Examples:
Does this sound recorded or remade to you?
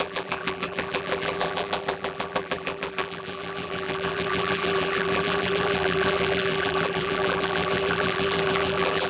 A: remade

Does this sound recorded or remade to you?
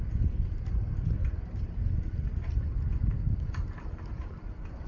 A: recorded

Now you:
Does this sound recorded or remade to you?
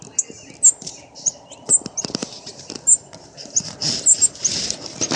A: recorded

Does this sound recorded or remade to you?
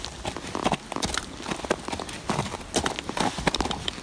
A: recorded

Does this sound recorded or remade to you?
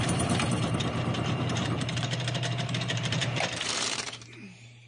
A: remade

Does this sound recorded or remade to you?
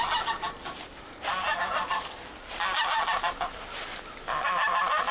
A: recorded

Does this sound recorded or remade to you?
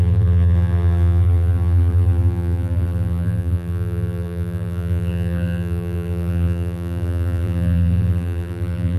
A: remade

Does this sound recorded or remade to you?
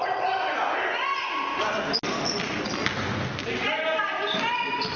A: recorded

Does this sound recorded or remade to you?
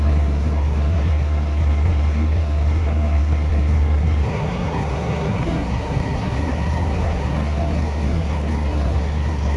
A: remade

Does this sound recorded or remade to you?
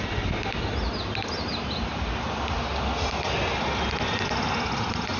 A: recorded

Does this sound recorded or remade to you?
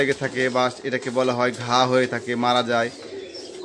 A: recorded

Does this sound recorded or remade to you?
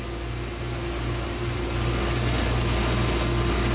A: recorded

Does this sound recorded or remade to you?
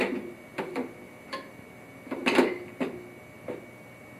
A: recorded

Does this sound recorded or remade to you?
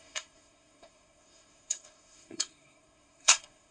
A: remade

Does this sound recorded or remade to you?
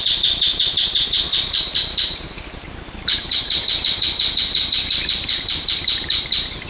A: recorded